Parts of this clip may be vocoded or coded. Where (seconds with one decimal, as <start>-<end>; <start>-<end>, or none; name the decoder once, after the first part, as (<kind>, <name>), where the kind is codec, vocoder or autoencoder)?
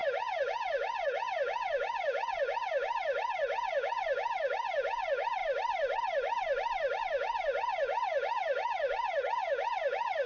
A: 0.0-5.4 (vocoder, Vocos); 7.0-10.3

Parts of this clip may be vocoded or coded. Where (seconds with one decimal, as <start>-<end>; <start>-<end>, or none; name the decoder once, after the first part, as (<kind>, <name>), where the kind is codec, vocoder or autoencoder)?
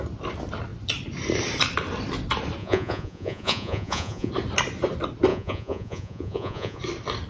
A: 2.6-4.3 (vocoder, Vocos); 5.3-6.8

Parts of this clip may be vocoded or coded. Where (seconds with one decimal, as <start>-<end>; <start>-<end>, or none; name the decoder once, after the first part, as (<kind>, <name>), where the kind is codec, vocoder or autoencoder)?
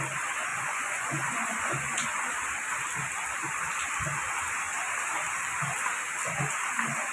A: 0.5-2.2 (vocoder, Vocos)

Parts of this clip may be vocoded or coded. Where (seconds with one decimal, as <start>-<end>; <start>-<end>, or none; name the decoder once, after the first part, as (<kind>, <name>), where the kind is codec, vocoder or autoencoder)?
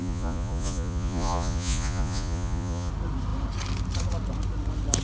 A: 0.0-2.9 (vocoder, Vocos)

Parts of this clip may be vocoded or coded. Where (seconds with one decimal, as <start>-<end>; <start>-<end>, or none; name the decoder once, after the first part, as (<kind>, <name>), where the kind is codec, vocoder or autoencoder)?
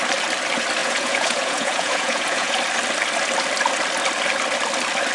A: 0.8-2.6 (vocoder, Vocos)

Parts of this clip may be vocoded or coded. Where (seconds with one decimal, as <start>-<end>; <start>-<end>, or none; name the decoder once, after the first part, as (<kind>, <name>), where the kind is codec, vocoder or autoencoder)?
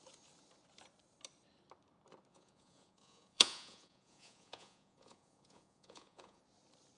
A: 2.3-6.4 (vocoder, Vocos)